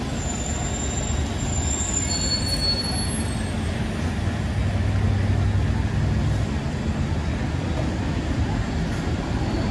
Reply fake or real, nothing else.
real